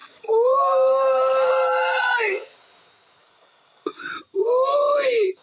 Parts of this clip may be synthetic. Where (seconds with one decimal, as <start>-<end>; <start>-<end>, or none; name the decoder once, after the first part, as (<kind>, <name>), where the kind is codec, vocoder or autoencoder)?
0.0-1.5 (codec, DAC); 3.2-4.0